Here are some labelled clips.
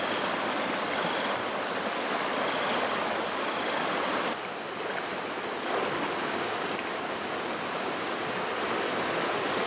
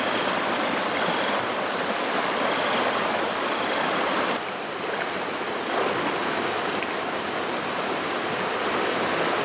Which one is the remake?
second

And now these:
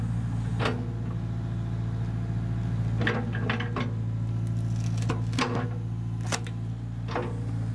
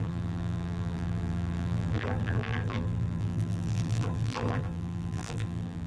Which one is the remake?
second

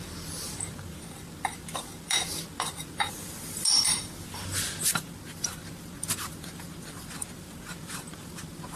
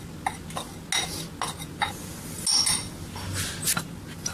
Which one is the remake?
first